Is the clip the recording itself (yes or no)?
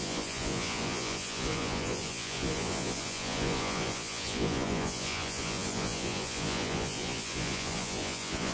no